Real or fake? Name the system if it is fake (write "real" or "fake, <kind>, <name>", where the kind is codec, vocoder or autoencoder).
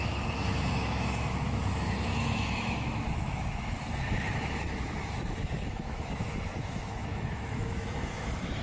fake, autoencoder, DAC-VAE